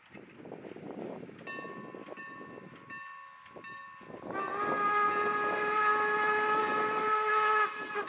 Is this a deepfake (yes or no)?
no